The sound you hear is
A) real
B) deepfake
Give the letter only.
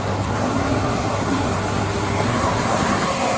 B